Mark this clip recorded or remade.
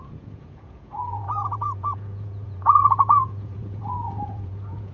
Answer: remade